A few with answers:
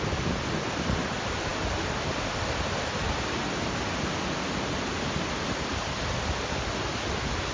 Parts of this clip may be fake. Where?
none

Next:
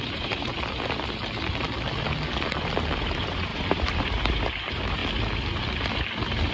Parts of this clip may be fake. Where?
0.0-0.5 (vocoder, BigVGAN v2); 3.0-5.0

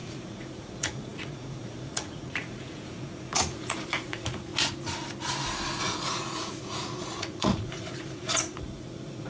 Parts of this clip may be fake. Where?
0.0-4.5 (vocoder, Vocos); 5.8-9.3

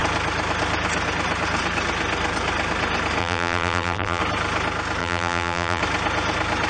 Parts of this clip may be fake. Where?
3.2-4.2 (vocoder, BigVGAN v2); 5.0-5.8